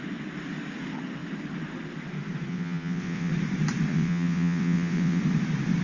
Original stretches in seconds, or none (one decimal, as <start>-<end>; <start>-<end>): 0.0-2.5; 3.3-3.9; 5.2-5.8